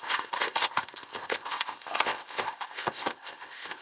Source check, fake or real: fake